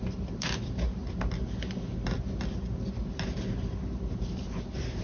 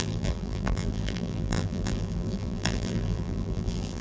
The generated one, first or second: second